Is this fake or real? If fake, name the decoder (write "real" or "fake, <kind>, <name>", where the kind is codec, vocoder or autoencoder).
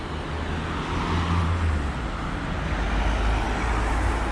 real